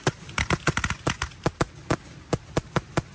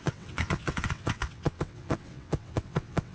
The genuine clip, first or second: first